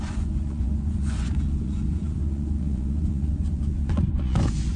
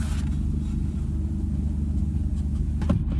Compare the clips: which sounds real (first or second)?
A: second